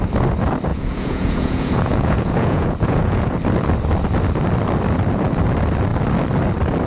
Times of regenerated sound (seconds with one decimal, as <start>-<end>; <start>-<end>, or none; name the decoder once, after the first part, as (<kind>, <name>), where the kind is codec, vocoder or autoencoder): 0.7-3.4 (vocoder, Vocos)